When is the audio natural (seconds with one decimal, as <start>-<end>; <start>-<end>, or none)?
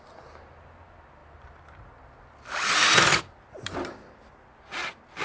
0.0-5.2